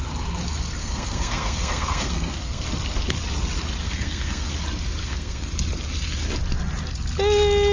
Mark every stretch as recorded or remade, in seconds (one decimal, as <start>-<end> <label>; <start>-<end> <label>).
0.0-0.8 recorded; 0.8-2.6 remade; 2.6-3.8 recorded; 3.8-4.5 remade; 4.5-5.0 recorded; 5.0-5.5 remade; 5.5-7.7 recorded